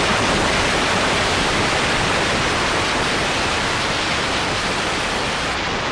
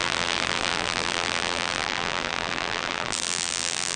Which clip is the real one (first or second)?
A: first